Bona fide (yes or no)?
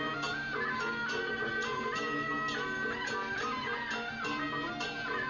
yes